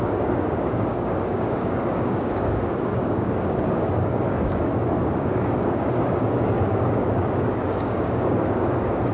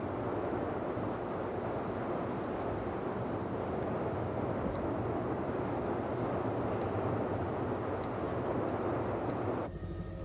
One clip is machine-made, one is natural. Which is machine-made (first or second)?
first